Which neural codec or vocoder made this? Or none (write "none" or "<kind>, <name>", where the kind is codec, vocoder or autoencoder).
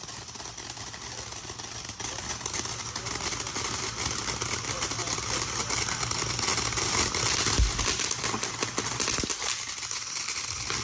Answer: none